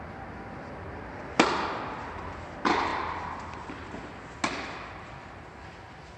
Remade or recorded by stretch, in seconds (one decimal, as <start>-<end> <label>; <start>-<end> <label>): 0.0-6.2 recorded